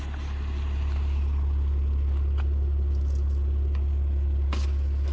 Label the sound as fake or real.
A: real